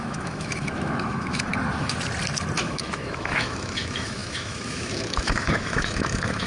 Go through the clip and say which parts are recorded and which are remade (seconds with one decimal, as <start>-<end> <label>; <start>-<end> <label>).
0.0-1.5 remade; 1.5-2.6 recorded; 2.6-6.5 remade